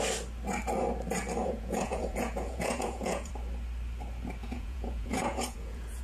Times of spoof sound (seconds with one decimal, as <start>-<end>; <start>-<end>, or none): 1.4-3.3; 4.4-6.0